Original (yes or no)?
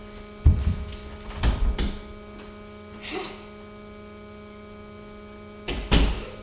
yes